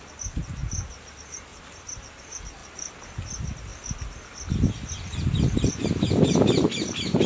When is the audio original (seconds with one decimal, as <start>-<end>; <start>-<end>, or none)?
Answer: 0.0-1.5; 2.0-7.3